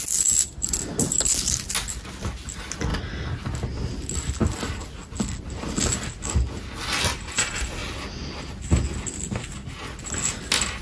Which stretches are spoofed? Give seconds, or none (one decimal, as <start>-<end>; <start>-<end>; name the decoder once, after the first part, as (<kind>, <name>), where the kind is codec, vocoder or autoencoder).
none